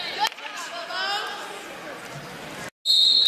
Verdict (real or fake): real